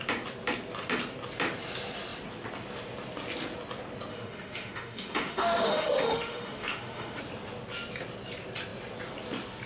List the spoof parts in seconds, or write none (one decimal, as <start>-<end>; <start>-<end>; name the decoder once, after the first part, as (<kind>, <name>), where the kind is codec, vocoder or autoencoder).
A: 4.1-7.2 (autoencoder, DAC-VAE)